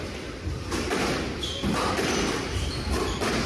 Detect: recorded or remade recorded